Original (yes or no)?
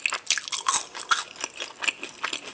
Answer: yes